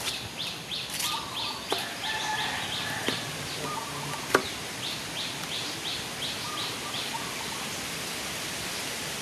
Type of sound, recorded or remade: recorded